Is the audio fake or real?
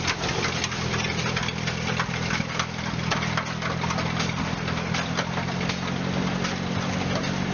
real